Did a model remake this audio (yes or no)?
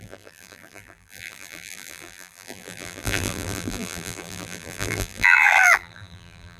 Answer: yes